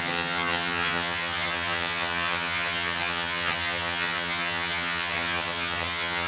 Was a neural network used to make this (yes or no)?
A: yes